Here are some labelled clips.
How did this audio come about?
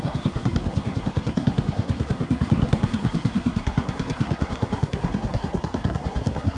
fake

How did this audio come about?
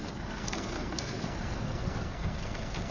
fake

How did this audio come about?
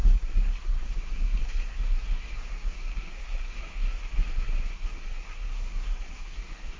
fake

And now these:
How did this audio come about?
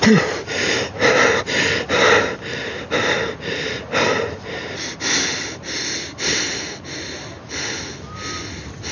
real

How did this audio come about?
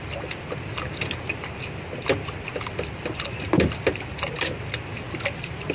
real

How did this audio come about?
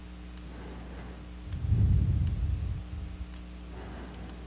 real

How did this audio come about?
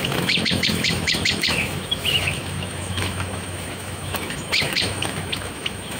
fake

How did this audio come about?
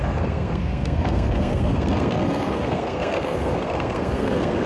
fake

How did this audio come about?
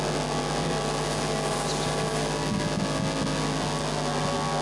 real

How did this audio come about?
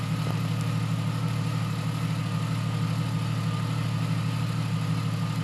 real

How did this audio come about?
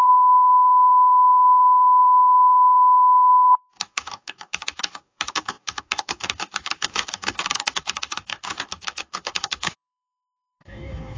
fake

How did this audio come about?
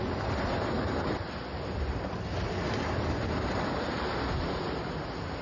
real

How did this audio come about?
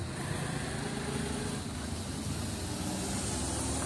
real